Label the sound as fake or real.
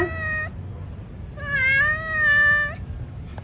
real